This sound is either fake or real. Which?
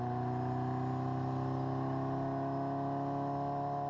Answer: real